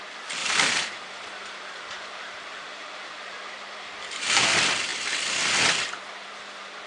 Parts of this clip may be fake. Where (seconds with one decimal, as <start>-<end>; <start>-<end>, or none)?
0.4-4.4